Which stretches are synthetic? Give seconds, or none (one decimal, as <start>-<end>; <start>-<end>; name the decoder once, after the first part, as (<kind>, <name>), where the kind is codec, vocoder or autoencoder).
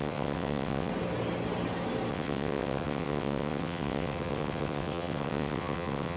0.0-0.9 (vocoder, WaveNeXt); 2.1-6.2